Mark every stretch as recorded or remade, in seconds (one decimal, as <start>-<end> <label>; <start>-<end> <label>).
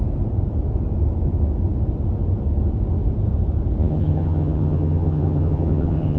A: 0.0-3.8 recorded; 3.8-6.2 remade